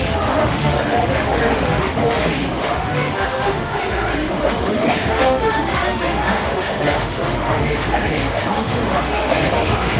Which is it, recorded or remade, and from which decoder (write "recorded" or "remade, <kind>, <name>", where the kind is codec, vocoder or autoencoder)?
remade, autoencoder, DAC-VAE